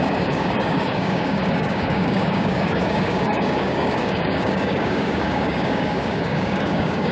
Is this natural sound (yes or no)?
no